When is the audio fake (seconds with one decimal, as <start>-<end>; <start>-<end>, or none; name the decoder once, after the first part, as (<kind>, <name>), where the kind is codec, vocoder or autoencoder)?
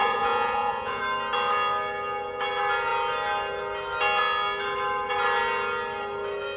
0.0-1.0 (vocoder, Vocos)